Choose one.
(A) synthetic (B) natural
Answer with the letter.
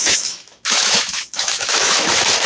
A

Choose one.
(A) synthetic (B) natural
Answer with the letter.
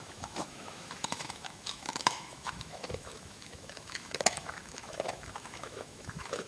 A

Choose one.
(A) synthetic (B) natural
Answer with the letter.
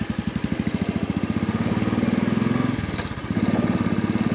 B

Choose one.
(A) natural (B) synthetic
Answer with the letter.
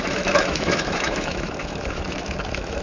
B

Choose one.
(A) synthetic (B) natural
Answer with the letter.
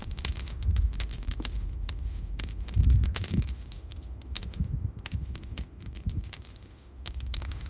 A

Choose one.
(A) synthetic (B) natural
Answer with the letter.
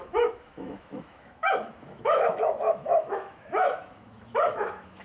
A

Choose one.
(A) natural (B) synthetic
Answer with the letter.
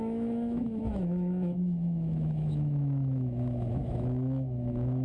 B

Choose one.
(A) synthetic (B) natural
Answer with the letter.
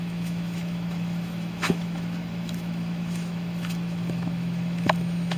A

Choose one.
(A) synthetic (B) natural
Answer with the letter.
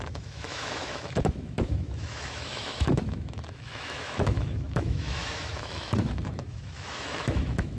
A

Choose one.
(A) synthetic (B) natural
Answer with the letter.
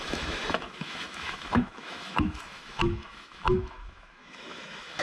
A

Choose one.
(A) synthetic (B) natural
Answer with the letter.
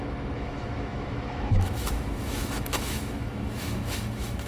A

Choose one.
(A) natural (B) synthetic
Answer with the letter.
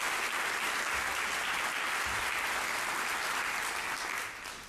A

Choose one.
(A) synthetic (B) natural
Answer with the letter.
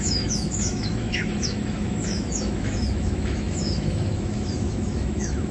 A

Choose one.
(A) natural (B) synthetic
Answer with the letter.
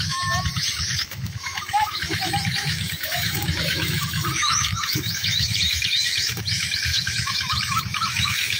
B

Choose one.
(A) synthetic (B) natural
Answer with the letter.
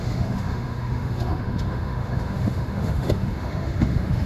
A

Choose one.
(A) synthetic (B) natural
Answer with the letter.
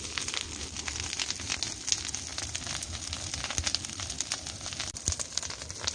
B